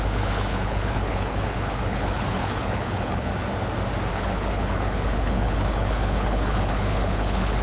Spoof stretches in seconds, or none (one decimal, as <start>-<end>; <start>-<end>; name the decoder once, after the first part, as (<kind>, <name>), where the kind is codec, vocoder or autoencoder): 0.0-3.3 (codec, HILCodec); 4.1-7.6